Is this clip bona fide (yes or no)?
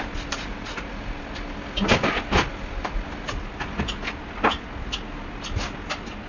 yes